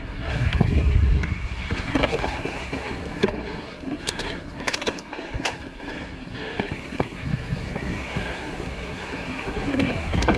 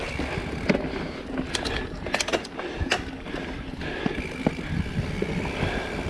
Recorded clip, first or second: second